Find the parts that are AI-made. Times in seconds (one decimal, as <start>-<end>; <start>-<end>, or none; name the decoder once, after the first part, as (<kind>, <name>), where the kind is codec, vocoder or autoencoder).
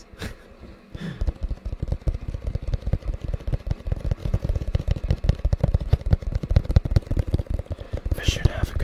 4.2-4.9 (vocoder, Vocos)